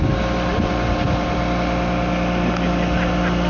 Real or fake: real